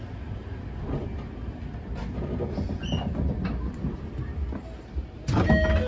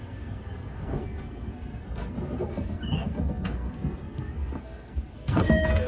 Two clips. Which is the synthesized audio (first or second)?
second